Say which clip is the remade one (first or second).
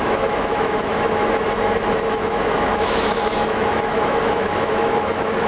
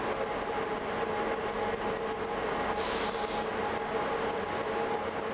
first